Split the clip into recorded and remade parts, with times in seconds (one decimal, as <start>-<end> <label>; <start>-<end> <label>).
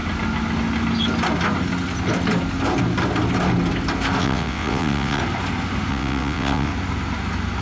0.0-4.2 recorded; 4.2-5.2 remade; 5.2-5.9 recorded; 5.9-6.7 remade; 6.7-7.6 recorded